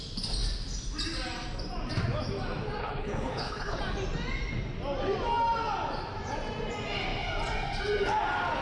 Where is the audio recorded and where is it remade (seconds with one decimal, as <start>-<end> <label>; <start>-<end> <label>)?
0.0-2.8 recorded; 2.8-3.8 remade; 3.8-8.6 recorded